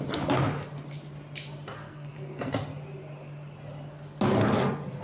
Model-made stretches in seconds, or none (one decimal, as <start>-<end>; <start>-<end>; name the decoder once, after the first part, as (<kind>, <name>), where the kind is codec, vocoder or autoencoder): 1.8-2.5 (codec, SNAC)